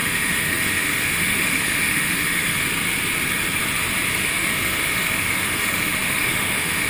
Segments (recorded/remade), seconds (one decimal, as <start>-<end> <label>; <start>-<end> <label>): 0.0-2.6 remade; 2.6-4.2 recorded; 4.2-6.9 remade